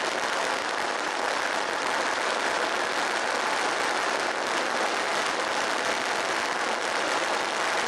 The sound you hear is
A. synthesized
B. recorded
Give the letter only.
B